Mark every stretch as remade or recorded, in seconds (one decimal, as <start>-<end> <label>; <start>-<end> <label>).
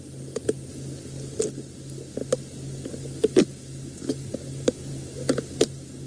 0.0-6.1 recorded